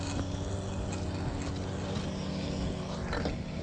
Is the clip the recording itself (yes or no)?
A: yes